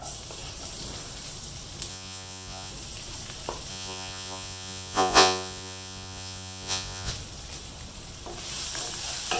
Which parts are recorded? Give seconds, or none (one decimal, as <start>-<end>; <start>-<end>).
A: 0.0-1.9; 2.7-3.7; 7.1-9.4